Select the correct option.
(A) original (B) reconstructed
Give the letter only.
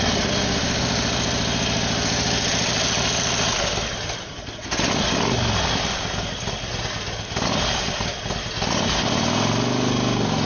A